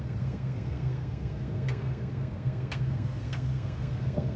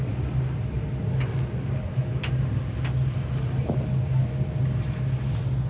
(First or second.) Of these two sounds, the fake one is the first